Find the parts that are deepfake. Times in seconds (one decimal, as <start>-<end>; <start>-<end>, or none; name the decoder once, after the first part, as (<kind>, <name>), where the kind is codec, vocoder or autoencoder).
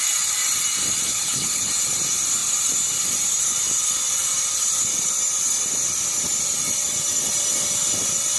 1.1-1.7 (codec, HILCodec)